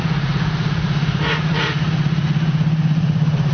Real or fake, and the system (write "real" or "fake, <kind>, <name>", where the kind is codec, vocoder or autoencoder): fake, vocoder, Vocos